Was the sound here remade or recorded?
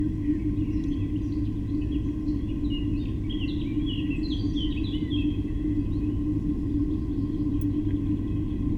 recorded